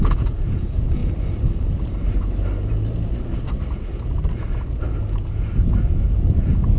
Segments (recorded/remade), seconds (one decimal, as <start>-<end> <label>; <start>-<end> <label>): 0.0-1.0 remade; 1.0-5.1 recorded; 5.1-6.8 remade